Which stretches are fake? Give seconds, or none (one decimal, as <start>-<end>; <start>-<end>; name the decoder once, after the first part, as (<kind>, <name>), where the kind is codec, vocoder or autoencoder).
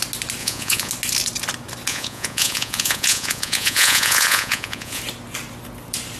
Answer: 0.4-0.9 (vocoder, Vocos); 1.9-5.0